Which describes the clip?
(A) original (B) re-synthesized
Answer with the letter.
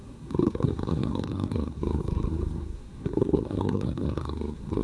B